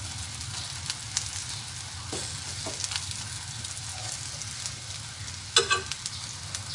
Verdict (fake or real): real